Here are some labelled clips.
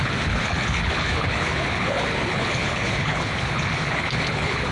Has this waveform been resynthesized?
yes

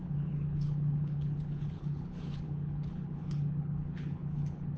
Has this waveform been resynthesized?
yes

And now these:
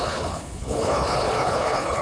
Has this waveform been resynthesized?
yes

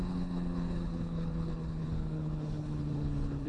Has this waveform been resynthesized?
yes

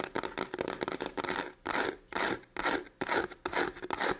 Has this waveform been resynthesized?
no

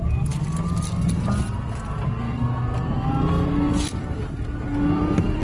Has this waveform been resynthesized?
no